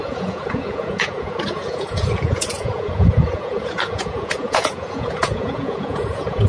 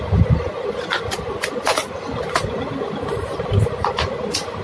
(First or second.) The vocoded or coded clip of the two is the first